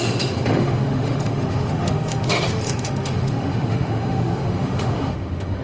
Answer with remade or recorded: remade